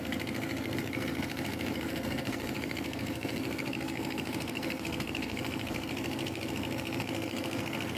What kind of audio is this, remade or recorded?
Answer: remade